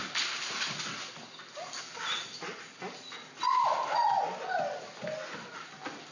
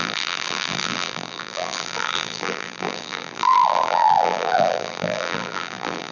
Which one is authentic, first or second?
first